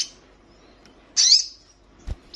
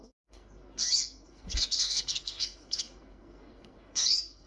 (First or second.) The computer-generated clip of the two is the second